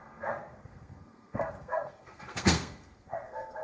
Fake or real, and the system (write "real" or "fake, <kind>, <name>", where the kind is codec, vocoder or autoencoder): fake, codec, SNAC